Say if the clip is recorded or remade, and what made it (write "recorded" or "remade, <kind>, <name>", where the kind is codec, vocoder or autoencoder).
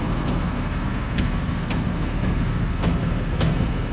remade, codec, SNAC